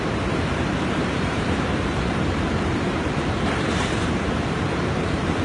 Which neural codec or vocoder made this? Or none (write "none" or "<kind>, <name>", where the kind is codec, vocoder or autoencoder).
vocoder, BigVGAN v2